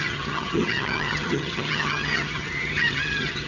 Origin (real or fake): fake